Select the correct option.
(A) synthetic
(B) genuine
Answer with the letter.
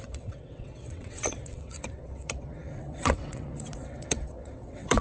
A